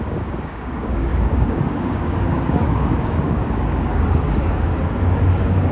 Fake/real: fake